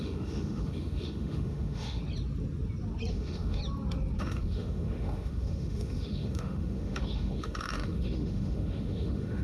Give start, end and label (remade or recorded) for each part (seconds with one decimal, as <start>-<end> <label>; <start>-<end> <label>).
0.0-2.0 remade; 2.0-3.1 recorded; 3.1-3.6 remade; 3.6-4.2 recorded; 4.2-9.4 remade